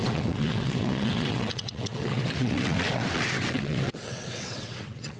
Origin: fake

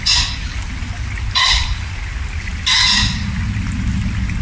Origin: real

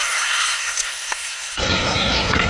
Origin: fake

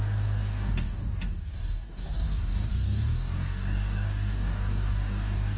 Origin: fake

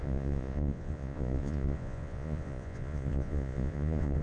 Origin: fake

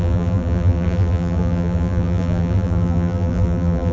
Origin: fake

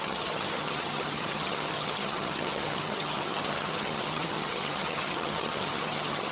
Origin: fake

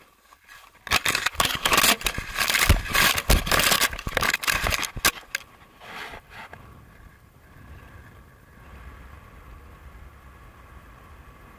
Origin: real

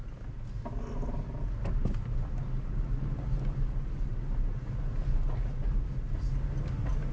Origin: real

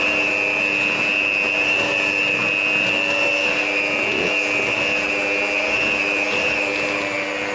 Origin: real